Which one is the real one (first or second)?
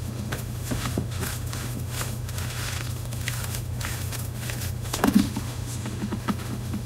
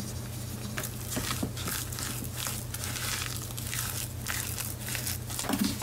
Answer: second